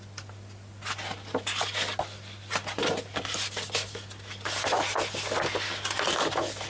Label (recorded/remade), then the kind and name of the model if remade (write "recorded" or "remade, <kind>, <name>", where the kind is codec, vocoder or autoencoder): recorded